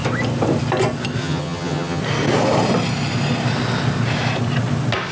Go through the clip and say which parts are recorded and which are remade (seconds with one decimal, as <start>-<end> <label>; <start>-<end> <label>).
0.0-1.2 recorded; 1.2-2.0 remade; 2.0-5.1 recorded